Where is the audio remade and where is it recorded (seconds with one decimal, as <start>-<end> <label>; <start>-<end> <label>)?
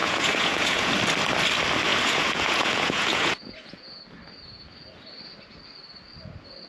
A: 0.0-0.9 remade; 0.9-1.9 recorded; 1.9-4.0 remade; 4.0-6.7 recorded